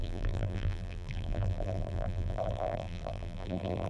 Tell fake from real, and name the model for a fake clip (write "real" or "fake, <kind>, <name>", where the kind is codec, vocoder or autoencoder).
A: fake, vocoder, BigVGAN v2